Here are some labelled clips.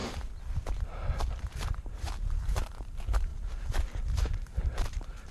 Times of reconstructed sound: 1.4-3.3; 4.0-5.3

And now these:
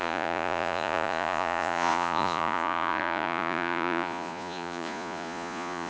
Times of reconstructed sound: 0.0-5.9

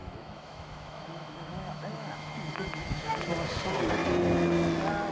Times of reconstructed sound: 0.0-3.1

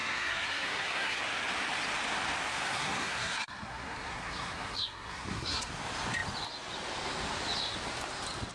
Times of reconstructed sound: 0.0-1.2; 2.5-5.7

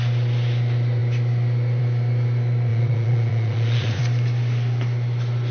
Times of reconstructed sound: 2.7-4.0

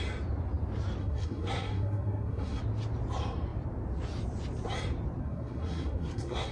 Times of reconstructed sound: 1.0-2.6; 5.2-6.5